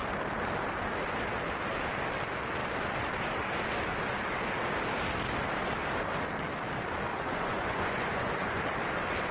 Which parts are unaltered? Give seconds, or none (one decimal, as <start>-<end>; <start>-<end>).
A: 0.0-7.1; 8.6-9.3